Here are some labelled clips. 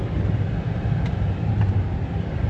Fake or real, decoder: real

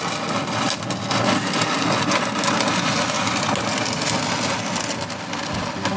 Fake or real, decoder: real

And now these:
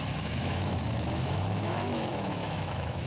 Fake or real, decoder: fake, autoencoder, DAC-VAE